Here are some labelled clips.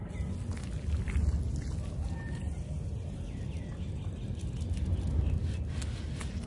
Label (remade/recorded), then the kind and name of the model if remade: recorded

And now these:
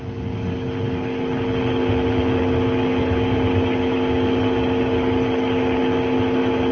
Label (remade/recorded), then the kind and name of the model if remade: recorded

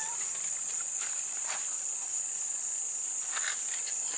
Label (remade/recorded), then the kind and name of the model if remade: recorded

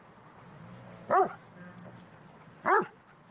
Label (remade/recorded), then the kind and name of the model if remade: recorded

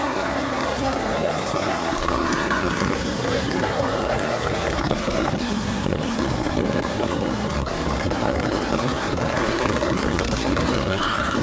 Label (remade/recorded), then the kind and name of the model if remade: remade, codec, SNAC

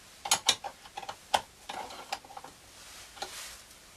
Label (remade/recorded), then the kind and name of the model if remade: recorded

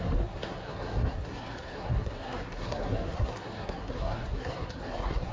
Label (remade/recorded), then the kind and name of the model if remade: remade, codec, SNAC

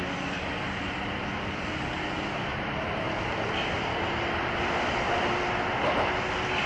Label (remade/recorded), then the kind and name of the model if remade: recorded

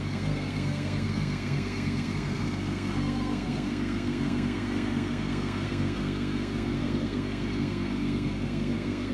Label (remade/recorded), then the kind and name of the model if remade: remade, codec, SNAC